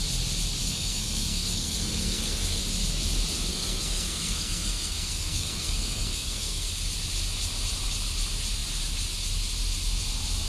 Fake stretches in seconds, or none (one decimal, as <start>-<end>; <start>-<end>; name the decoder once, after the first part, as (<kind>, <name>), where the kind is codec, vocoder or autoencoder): 0.6-2.6 (codec, SNAC); 3.5-6.7